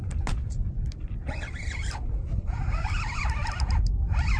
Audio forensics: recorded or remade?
recorded